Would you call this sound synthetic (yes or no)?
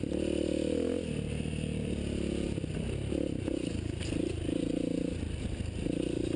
no